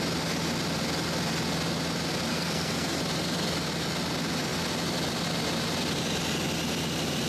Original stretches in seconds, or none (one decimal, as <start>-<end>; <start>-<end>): 0.0-2.3; 3.0-7.3